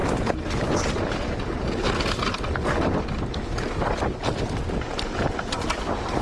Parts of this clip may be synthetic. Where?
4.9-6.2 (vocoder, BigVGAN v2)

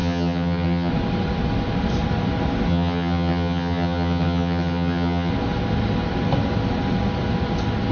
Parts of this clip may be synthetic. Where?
0.0-0.9 (vocoder, HiFi-GAN); 2.7-5.3

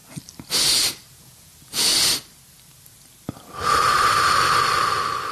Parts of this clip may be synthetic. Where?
1.1-1.9 (vocoder, Vocos)